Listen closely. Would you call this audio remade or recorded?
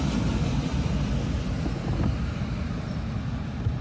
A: recorded